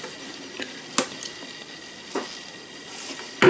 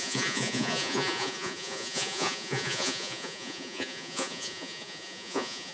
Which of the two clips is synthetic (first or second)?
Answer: second